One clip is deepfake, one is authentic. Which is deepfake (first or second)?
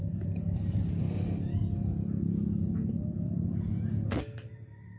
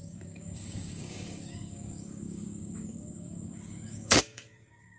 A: second